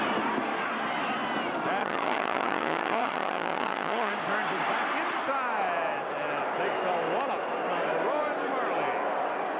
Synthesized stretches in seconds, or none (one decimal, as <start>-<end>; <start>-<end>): 1.8-4.1